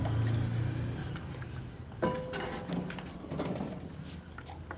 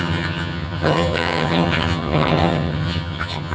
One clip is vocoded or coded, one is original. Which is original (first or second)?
first